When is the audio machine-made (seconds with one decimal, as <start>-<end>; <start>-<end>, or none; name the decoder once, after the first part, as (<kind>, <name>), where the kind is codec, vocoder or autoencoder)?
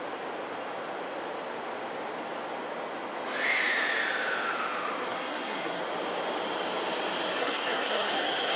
5.1-5.8 (codec, SNAC); 7.4-8.6